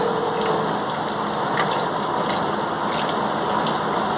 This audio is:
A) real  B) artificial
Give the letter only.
A